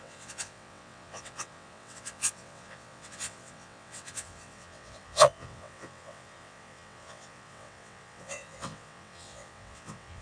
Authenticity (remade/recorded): remade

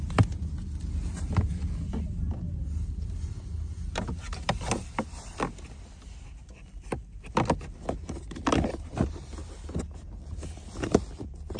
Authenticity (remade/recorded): recorded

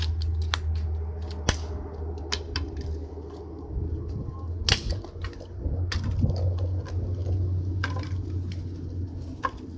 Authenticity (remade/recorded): recorded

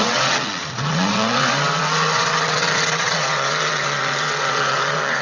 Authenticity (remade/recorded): remade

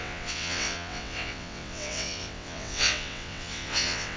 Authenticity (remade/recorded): remade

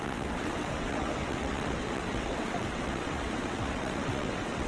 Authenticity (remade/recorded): remade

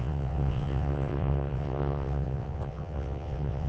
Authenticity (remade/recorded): remade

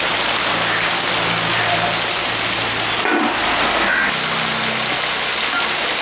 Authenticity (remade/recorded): recorded